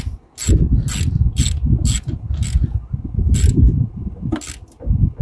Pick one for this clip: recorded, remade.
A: recorded